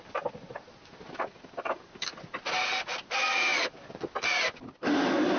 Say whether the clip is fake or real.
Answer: real